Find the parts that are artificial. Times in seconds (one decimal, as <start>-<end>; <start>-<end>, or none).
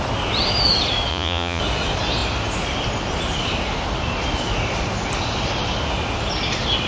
1.1-1.6